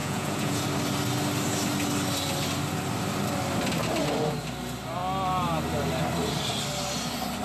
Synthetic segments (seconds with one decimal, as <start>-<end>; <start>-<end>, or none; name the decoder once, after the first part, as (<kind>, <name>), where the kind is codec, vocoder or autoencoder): 0.0-0.6 (vocoder, Vocos)